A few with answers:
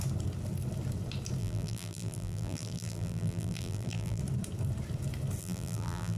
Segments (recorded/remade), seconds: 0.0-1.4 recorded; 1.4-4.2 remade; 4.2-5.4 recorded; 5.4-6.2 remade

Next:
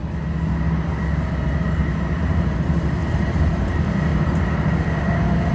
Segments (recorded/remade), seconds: 0.0-2.1 recorded; 2.1-3.0 remade; 3.0-3.5 recorded; 3.5-4.1 remade; 4.1-5.5 recorded

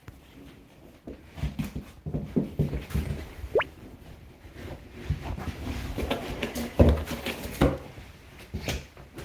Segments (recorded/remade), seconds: 0.0-3.1 recorded; 3.1-6.8 remade; 6.8-9.2 recorded

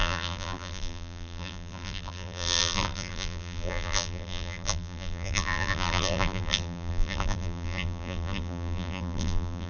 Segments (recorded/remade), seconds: 0.0-9.7 remade

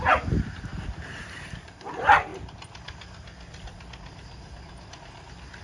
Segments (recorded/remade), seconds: 0.0-0.7 remade; 0.7-1.2 recorded; 1.2-2.3 remade; 2.3-5.6 recorded

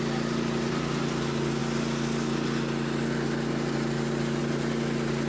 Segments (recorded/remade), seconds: 0.0-5.3 recorded